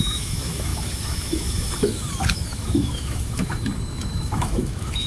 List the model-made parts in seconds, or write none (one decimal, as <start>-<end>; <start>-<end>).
0.0-5.1